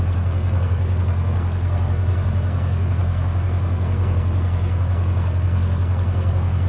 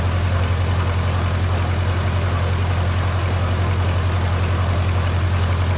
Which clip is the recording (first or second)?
second